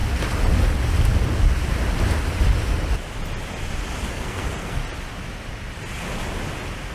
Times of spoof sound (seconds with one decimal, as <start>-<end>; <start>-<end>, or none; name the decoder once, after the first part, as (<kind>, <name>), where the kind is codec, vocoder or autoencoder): 4.1-4.8 (codec, SNAC)

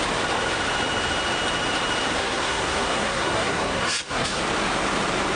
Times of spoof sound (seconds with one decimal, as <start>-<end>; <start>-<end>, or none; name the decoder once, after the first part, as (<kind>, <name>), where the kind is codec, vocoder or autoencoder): 2.2-4.4 (codec, SNAC)

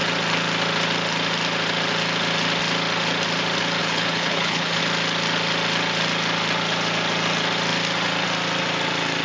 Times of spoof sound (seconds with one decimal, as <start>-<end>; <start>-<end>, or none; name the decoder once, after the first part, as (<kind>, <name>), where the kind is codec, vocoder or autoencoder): 3.8-4.8 (codec, HILCodec)

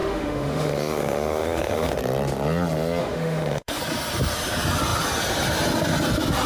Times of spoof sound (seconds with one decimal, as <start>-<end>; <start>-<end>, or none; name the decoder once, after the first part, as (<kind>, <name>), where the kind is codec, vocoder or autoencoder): 0.0-2.0 (autoencoder, DAC-VAE); 3.0-3.8

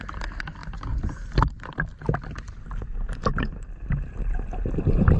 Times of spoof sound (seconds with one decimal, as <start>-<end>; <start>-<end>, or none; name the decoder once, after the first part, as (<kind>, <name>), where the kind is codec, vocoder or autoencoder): none

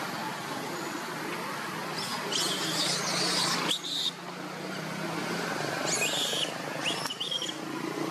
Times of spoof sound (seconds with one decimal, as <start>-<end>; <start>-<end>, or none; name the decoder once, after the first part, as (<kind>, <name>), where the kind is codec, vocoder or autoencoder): none

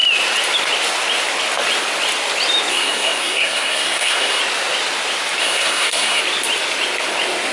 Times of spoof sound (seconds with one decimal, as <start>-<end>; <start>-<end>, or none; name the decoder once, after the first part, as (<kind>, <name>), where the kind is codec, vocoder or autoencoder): 2.7-4.4 (codec, SNAC); 5.4-6.2